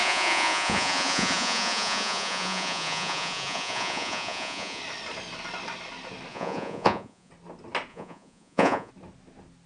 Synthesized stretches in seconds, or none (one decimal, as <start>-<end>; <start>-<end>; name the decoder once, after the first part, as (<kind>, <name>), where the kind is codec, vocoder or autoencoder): 0.0-4.8 (vocoder, Vocos); 6.3-7.3; 7.9-8.9